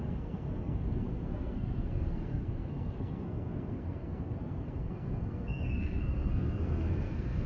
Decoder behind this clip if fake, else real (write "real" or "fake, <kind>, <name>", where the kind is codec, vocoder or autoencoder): fake, codec, SNAC